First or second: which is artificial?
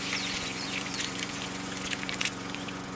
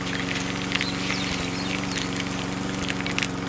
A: first